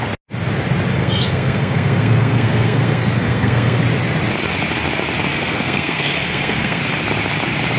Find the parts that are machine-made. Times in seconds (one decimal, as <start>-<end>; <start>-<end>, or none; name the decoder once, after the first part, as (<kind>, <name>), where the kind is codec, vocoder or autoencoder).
1.0-3.8 (codec, SNAC); 5.3-6.8